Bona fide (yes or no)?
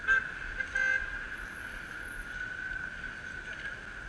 yes